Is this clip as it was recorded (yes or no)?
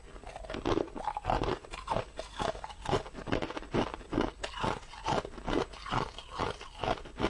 yes